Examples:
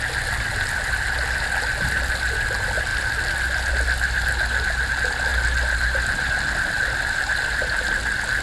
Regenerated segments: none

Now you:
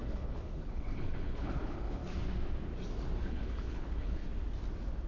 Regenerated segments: 0.0-2.0 (codec, HILCodec); 3.2-4.2

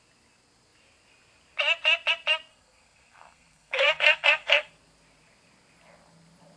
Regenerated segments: 2.5-4.7 (codec, SNAC)

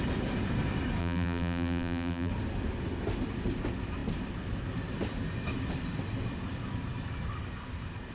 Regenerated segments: 1.0-2.3 (vocoder, BigVGAN v2)

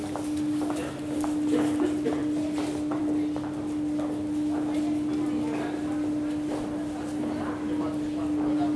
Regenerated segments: none

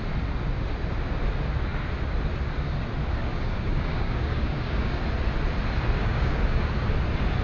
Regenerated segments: 3.2-5.0 (codec, DAC); 6.0-6.9